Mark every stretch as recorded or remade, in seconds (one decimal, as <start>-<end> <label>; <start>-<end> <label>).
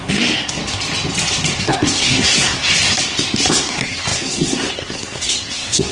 0.0-0.6 remade; 0.6-1.6 recorded; 1.6-2.7 remade; 2.7-3.5 recorded; 3.5-5.9 remade